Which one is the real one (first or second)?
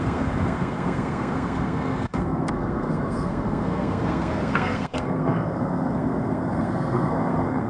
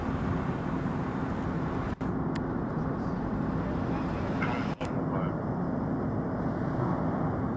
second